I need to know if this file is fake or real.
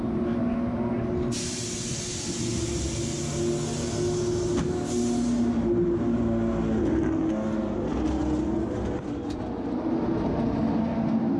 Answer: real